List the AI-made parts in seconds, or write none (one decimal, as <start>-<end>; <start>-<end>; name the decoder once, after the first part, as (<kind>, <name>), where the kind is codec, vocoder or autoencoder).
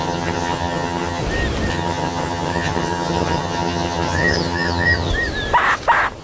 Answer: 0.0-1.2 (vocoder, HiFi-GAN); 1.7-5.1